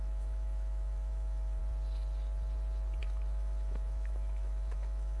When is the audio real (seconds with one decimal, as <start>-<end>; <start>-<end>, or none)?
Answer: 1.6-3.0